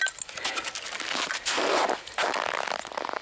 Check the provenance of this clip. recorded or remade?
recorded